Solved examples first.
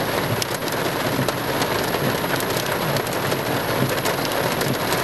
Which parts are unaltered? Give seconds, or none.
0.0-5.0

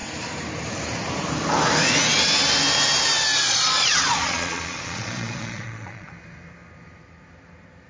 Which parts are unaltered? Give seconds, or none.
0.0-3.4; 6.1-7.9

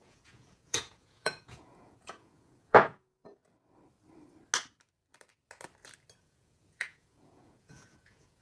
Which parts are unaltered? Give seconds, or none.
3.4-6.2

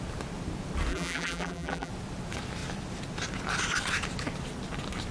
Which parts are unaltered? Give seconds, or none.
0.0-0.9; 1.9-5.1

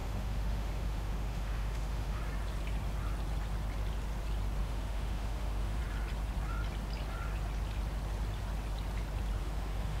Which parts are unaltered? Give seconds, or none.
2.2-4.6; 5.8-9.4